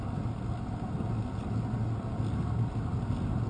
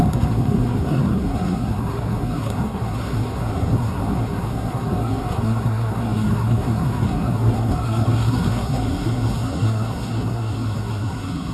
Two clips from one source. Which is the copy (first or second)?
second